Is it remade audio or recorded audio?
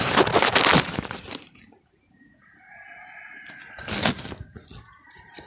recorded